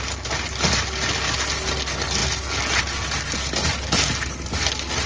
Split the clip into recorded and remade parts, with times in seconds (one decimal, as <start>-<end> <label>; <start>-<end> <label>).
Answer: 0.0-5.1 recorded